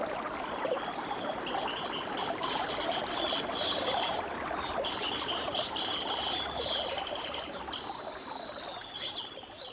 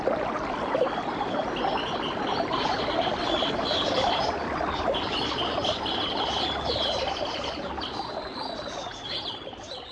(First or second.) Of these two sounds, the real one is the second